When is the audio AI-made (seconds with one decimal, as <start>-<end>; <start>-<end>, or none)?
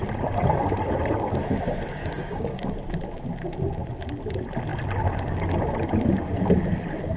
2.0-2.7